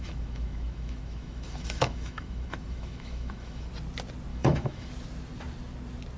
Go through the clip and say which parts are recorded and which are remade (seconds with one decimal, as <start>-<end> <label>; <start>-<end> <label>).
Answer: 0.0-3.7 remade; 3.7-4.3 recorded; 4.3-4.9 remade; 4.9-6.2 recorded